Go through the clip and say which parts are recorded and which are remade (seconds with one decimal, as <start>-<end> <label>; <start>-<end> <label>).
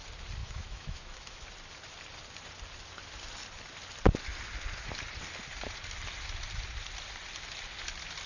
0.0-0.4 recorded; 0.4-1.4 remade; 1.4-8.3 recorded